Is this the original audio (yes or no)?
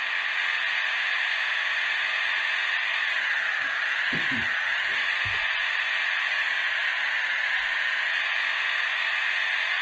yes